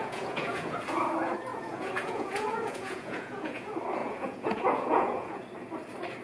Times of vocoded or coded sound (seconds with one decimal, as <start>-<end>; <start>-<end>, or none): 0.0-0.8; 1.5-3.6; 4.0-5.4